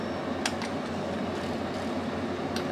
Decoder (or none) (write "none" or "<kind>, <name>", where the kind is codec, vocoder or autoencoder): none